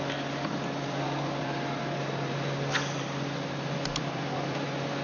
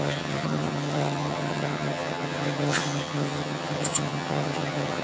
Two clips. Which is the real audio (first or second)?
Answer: first